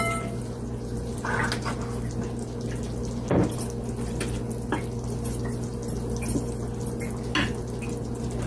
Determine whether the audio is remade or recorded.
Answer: recorded